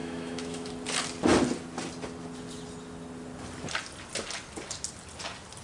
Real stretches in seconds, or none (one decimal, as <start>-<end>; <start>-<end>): 0.7-5.6